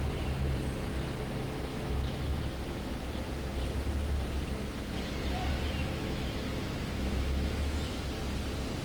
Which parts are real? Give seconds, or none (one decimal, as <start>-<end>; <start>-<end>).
0.0-1.7; 2.9-5.8; 8.0-8.8